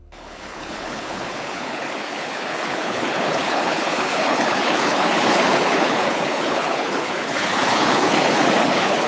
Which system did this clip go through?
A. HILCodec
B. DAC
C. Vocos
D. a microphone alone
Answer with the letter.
A